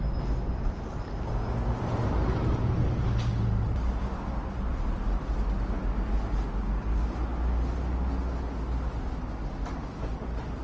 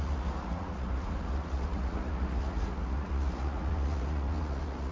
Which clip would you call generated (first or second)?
second